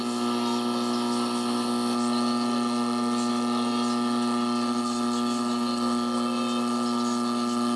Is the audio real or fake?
real